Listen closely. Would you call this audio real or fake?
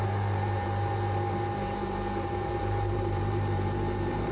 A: fake